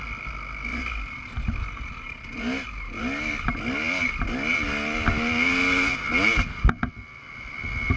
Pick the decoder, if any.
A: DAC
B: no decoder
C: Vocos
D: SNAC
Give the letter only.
B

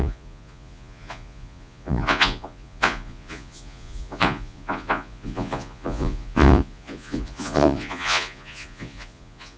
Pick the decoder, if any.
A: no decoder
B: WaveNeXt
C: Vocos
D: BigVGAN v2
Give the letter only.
C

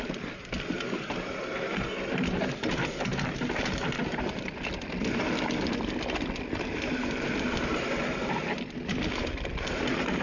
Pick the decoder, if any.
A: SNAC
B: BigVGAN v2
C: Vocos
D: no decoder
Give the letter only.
D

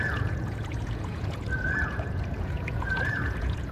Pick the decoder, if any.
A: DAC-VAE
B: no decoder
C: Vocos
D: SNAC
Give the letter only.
C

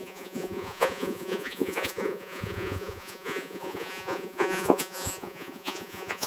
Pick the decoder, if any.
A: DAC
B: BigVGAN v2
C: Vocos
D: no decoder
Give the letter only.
C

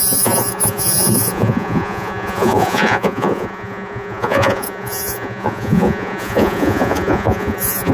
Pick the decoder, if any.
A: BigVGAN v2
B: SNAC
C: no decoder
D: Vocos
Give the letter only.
D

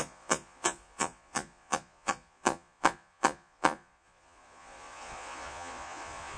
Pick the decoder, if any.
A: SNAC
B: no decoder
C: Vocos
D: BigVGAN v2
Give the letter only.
C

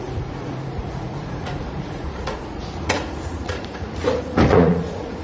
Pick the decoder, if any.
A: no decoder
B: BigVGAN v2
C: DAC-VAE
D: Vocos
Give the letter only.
D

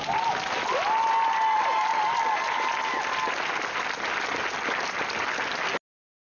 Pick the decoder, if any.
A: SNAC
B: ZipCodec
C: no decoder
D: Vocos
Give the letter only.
C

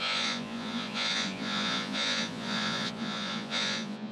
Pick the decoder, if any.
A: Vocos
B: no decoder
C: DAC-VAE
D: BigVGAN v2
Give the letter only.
A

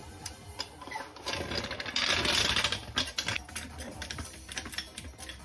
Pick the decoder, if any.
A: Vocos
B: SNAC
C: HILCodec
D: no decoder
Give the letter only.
D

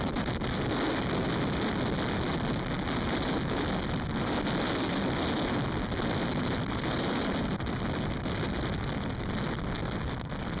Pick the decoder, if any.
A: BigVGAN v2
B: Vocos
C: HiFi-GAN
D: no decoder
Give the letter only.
D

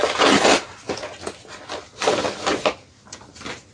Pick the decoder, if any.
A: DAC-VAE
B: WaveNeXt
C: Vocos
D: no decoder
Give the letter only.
D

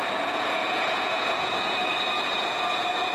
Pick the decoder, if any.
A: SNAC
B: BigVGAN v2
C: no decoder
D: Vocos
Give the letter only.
D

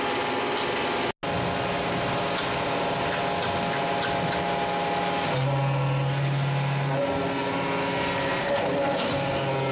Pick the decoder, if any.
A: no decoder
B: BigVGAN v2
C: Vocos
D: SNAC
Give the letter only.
A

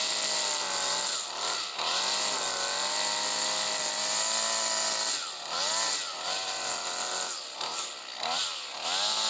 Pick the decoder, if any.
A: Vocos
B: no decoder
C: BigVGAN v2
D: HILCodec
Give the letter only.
B